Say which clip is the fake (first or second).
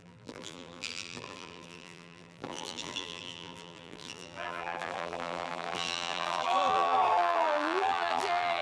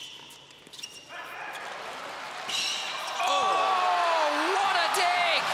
first